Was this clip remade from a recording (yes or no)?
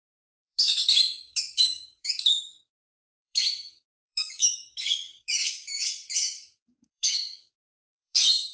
yes